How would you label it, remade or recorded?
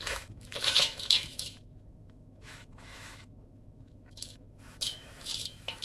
remade